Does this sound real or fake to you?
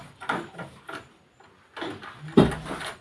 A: real